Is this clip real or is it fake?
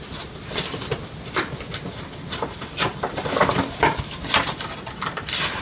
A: real